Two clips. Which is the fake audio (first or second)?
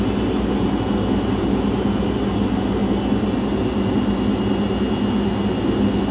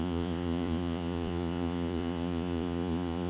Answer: second